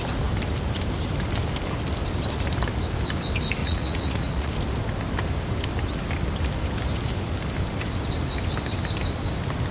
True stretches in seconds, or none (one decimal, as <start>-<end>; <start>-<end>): 0.0-3.6; 4.5-9.7